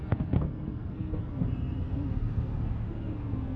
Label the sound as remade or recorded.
remade